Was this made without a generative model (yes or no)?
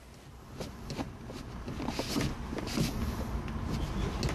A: yes